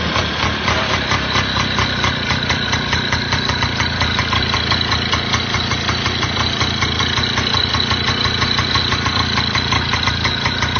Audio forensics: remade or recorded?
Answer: recorded